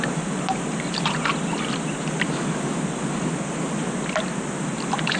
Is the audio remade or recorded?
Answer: recorded